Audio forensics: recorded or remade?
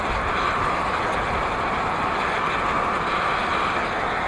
recorded